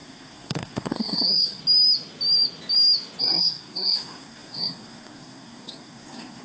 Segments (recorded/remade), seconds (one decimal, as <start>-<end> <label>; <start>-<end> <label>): 0.0-1.6 remade; 1.6-3.2 recorded; 3.2-6.4 remade